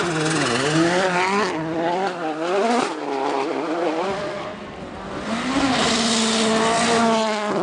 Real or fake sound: real